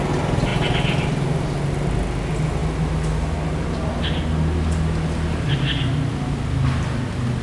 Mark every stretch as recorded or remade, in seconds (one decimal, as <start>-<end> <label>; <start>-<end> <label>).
0.0-7.4 recorded